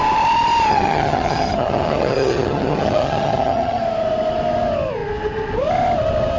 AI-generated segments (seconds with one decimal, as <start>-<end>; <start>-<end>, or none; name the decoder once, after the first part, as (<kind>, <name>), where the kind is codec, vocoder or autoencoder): 0.7-3.8 (vocoder, HiFi-GAN)